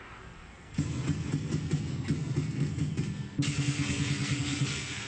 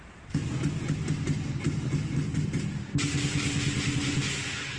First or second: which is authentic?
second